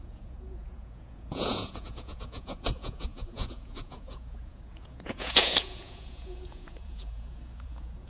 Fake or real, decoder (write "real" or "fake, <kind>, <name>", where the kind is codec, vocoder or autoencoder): fake, vocoder, Vocos